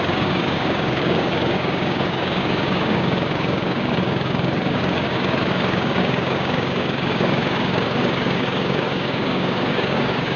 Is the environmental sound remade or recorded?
remade